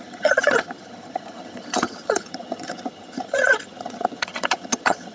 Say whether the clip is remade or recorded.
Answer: remade